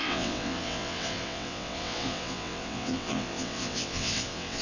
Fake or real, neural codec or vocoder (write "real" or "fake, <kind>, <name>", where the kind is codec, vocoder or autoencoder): fake, vocoder, WaveNeXt